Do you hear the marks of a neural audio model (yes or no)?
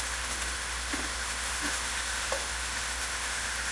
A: yes